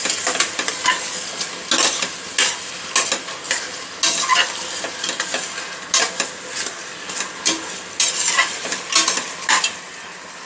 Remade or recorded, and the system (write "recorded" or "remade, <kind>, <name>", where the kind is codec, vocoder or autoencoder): recorded